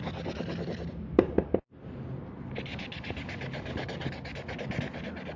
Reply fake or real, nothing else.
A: real